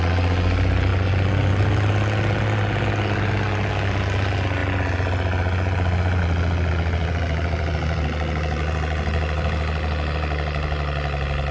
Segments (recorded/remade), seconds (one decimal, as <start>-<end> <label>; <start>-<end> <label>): 0.0-11.5 recorded